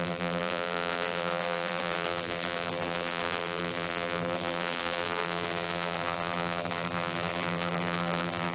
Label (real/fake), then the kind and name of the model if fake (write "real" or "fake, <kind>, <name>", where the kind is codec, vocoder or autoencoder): fake, vocoder, BigVGAN v2